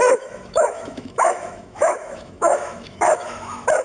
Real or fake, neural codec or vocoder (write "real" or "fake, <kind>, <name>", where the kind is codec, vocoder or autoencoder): fake, autoencoder, DAC-VAE